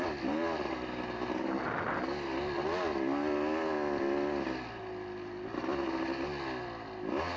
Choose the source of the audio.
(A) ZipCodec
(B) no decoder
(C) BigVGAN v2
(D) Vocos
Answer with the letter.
B